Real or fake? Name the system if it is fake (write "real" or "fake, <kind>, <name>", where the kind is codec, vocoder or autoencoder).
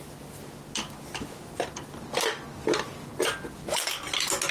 real